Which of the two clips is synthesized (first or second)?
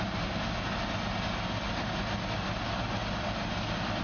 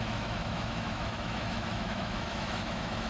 second